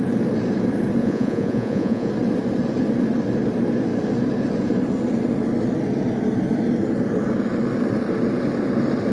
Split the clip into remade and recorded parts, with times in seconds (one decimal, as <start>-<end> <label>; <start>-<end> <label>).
0.0-1.0 recorded; 1.0-2.1 remade; 2.1-9.1 recorded